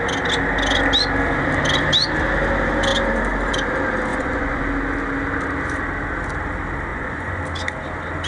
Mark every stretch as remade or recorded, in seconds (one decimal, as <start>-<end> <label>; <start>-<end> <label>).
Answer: 0.0-4.1 recorded; 4.1-4.6 remade; 4.6-6.9 recorded; 6.9-7.4 remade; 7.4-8.3 recorded